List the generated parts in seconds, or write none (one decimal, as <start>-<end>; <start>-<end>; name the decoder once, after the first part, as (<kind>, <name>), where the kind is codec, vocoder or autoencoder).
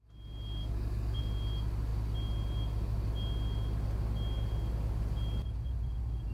0.6-1.2 (codec, DAC)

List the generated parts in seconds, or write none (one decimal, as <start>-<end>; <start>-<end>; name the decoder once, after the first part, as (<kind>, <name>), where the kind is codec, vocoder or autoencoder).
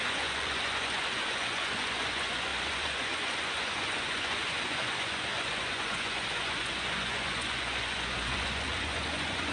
0.0-9.5 (vocoder, Vocos)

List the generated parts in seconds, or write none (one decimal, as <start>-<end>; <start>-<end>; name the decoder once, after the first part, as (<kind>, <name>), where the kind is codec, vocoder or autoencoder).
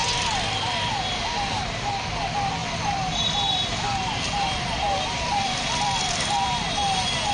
0.0-0.9 (vocoder, BigVGAN v2); 2.6-6.5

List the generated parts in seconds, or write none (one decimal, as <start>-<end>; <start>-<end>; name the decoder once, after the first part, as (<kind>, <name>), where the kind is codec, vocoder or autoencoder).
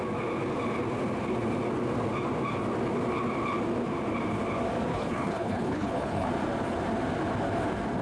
4.9-6.3 (codec, HILCodec)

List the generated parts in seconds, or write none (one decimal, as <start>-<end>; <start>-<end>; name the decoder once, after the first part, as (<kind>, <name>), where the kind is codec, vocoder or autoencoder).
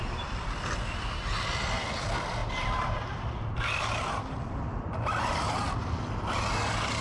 none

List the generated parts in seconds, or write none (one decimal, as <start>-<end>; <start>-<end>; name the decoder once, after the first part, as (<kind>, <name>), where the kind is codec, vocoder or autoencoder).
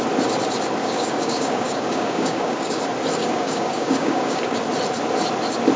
0.8-2.8 (codec, DAC); 3.2-4.6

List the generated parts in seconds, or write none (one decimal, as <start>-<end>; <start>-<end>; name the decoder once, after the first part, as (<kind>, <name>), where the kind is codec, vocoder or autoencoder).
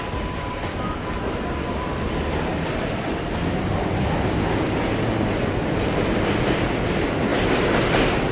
none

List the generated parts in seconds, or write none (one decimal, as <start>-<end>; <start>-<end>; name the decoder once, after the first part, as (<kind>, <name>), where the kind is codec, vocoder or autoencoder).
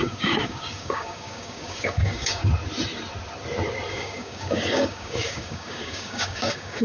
0.0-2.4 (codec, DAC); 3.9-6.8